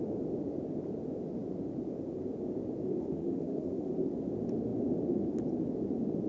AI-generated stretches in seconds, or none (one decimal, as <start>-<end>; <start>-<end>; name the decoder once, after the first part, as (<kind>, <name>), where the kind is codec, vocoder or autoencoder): 3.0-3.9 (autoencoder, DAC-VAE)